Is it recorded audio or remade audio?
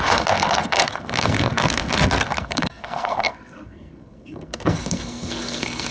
remade